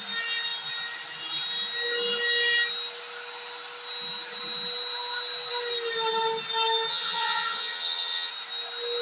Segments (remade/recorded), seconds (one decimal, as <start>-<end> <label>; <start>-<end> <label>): 0.0-6.9 recorded; 6.9-8.3 remade; 8.3-9.0 recorded

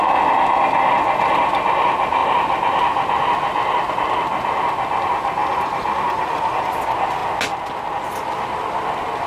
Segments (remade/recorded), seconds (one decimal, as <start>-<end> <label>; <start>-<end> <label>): 0.0-5.4 recorded; 5.4-6.7 remade; 6.7-9.3 recorded

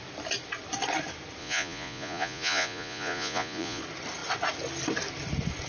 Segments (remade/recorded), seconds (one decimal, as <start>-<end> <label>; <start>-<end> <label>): 0.0-1.4 recorded; 1.4-3.8 remade; 3.8-5.7 recorded

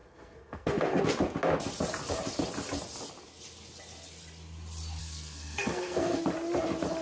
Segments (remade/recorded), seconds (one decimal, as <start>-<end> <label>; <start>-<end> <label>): 0.0-1.0 remade; 1.0-5.0 recorded; 5.0-6.2 remade; 6.2-7.0 recorded